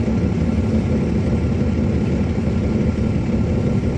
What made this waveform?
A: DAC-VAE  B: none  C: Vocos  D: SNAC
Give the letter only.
B